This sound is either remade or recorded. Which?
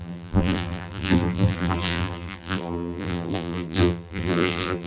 remade